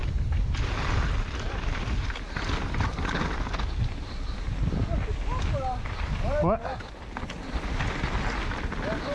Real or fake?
real